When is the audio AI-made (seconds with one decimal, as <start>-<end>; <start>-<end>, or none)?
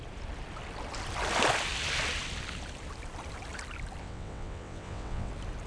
4.0-5.3